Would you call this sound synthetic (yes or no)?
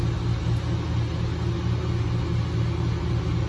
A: no